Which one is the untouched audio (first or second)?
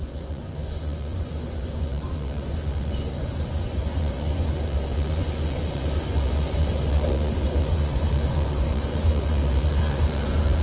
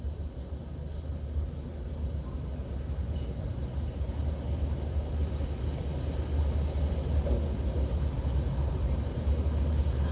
second